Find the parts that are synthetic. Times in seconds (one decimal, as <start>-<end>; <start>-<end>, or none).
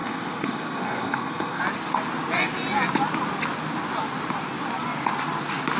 0.0-1.6